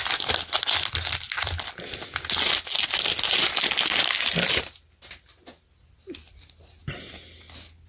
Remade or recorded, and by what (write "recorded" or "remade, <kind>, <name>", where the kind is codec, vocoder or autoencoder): recorded